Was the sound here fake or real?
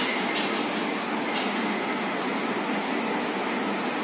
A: real